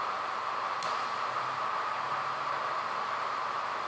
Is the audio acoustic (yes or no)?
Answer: yes